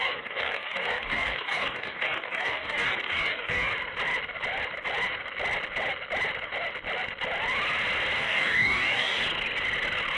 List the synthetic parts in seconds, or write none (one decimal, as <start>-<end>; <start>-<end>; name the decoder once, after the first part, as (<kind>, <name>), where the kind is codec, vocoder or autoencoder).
0.0-3.7 (codec, DAC); 8.2-9.2